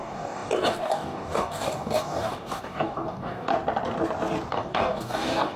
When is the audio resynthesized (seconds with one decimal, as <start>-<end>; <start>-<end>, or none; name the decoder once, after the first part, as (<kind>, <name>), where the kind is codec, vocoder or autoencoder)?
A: 0.0-3.5 (codec, DAC); 4.5-5.6